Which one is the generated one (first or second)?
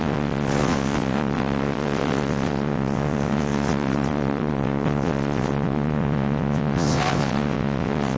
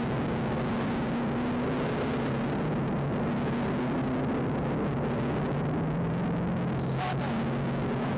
first